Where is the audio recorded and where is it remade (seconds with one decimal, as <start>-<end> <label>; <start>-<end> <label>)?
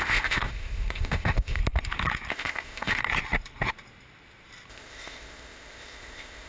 0.0-1.6 remade; 1.6-2.3 recorded; 2.3-3.0 remade; 3.0-4.7 recorded; 4.7-6.5 remade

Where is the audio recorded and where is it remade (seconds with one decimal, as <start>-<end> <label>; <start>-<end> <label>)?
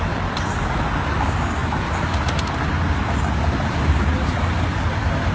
0.0-5.3 recorded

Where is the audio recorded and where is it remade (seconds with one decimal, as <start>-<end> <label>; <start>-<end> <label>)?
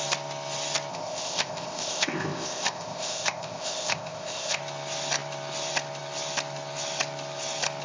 0.0-0.9 recorded; 0.9-4.6 remade; 4.6-7.8 recorded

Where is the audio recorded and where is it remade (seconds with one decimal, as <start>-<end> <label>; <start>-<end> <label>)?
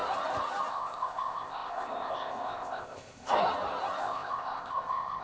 0.0-0.7 recorded; 0.7-3.4 remade; 3.4-4.0 recorded; 4.0-5.2 remade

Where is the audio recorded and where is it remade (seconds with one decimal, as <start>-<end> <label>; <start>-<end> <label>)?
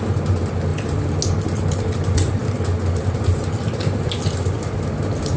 0.0-5.4 recorded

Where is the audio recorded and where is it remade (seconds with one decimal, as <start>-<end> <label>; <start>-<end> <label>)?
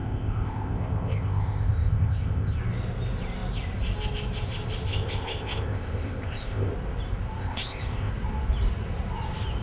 0.0-2.6 remade; 2.6-4.9 recorded; 4.9-6.7 remade; 6.7-7.4 recorded; 7.4-8.1 remade; 8.1-9.6 recorded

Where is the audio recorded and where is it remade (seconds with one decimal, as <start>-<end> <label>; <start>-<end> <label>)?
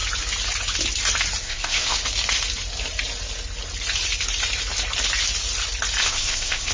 0.0-1.4 recorded; 1.4-2.0 remade; 2.0-6.0 recorded; 6.0-6.7 remade